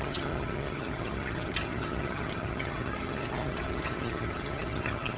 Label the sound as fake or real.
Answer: fake